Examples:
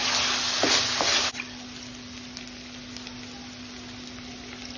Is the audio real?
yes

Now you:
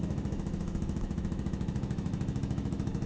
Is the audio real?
no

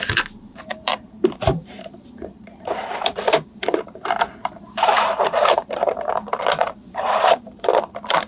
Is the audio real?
no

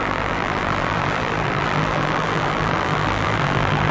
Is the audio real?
no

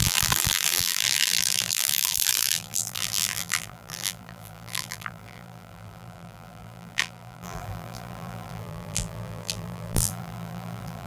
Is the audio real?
no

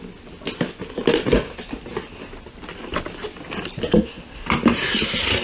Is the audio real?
yes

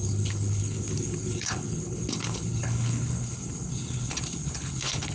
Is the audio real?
no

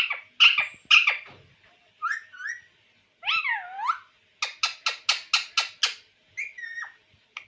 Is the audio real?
yes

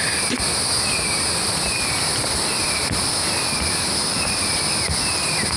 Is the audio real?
yes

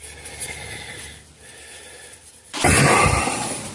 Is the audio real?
no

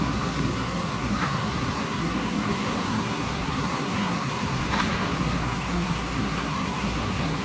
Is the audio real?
no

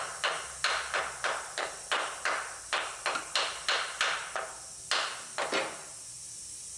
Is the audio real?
yes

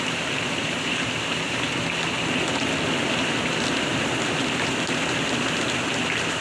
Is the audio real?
yes